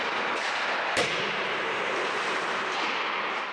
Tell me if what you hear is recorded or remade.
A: recorded